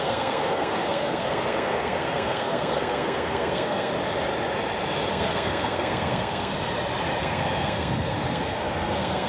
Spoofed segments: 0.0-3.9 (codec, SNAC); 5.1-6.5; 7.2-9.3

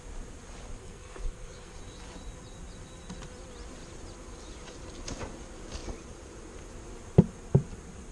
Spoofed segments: 0.8-1.8 (codec, SNAC)

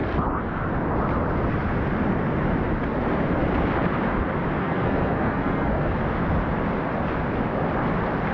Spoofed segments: 4.6-6.0 (codec, SNAC)

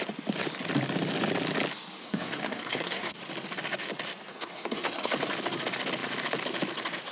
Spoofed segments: 2.0-3.2 (codec, SNAC); 4.3-5.1

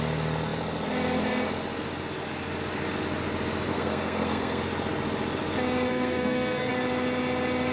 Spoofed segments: 3.7-4.6 (codec, SNAC); 5.9-6.7